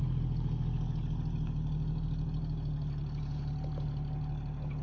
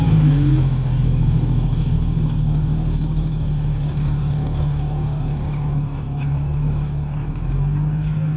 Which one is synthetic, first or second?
second